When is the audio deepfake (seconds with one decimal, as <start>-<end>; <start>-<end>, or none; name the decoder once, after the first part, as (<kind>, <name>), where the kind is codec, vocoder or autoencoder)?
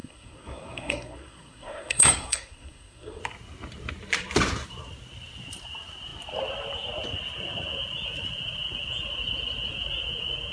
0.0-3.2 (codec, SNAC)